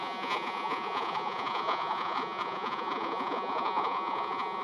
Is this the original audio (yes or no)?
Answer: no